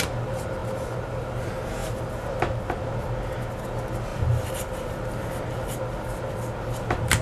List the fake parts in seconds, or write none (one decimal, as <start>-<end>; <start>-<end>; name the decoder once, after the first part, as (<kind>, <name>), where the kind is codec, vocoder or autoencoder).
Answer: none